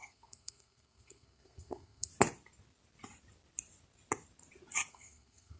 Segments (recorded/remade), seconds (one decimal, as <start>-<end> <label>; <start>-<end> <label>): 0.0-2.1 remade; 2.1-4.9 recorded; 4.9-5.6 remade